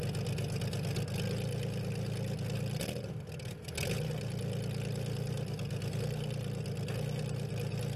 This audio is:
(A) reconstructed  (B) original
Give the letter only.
B